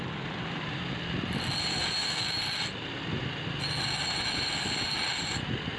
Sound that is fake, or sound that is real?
real